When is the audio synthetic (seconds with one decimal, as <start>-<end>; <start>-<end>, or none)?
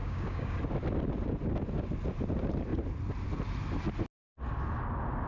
0.0-0.6